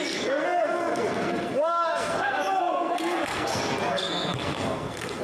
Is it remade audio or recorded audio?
remade